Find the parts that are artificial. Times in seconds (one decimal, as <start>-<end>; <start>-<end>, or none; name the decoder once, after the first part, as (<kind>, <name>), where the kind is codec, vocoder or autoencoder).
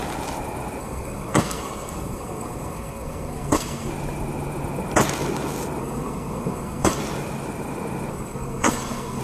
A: 0.8-3.9 (codec, SNAC); 5.8-7.0; 8.1-9.2